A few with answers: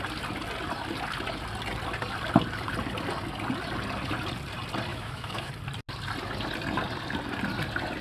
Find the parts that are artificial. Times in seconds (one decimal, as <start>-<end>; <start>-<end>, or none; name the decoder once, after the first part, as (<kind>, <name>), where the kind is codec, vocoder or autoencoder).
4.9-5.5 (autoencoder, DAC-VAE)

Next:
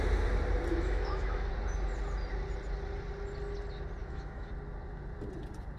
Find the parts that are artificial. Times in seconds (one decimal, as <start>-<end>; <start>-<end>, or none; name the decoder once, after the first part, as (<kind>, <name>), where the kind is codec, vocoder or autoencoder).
0.7-1.5 (autoencoder, DAC-VAE); 4.0-4.5

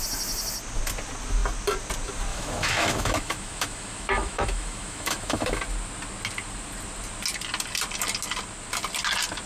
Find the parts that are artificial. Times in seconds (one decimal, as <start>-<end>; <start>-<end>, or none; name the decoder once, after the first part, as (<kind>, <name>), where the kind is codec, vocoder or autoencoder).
2.3-5.6 (autoencoder, DAC-VAE)